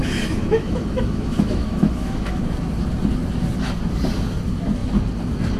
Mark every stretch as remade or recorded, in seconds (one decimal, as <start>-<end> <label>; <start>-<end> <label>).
0.0-2.4 remade; 2.4-5.6 recorded